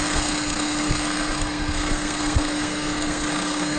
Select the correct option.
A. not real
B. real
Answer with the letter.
A